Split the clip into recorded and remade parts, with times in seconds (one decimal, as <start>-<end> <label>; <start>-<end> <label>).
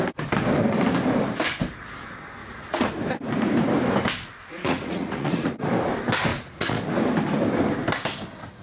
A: 0.0-2.4 recorded; 2.4-2.9 remade; 2.9-4.5 recorded; 4.5-5.6 remade; 5.6-6.3 recorded; 6.3-6.8 remade; 6.8-8.6 recorded